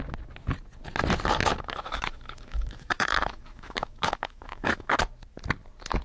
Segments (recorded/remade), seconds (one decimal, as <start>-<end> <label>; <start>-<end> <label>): 0.0-1.4 recorded; 1.4-5.0 remade; 5.0-6.0 recorded